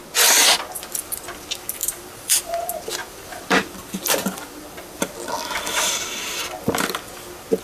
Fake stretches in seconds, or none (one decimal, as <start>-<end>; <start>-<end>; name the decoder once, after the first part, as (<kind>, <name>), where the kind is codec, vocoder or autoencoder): 1.8-2.4 (vocoder, BigVGAN v2); 3.0-5.9